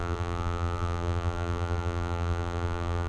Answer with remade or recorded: remade